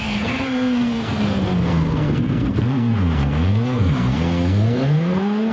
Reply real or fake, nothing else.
fake